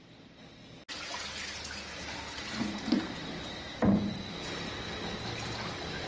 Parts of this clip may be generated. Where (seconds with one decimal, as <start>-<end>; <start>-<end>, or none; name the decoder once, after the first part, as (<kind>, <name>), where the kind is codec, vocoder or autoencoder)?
none